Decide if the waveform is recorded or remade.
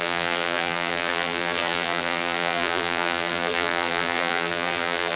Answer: remade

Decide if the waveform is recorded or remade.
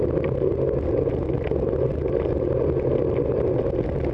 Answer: recorded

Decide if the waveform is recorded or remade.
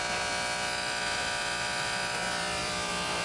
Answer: remade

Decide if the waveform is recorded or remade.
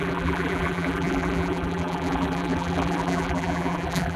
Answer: remade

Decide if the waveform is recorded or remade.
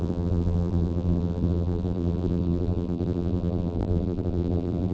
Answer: remade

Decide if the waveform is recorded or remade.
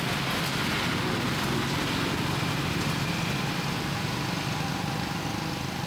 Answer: recorded